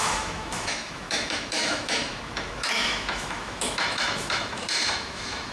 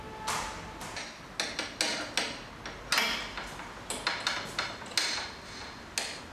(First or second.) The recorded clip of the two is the second